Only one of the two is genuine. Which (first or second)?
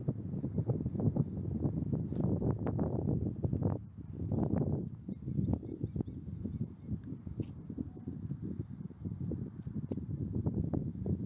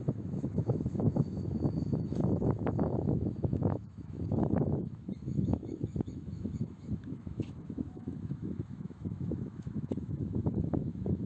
first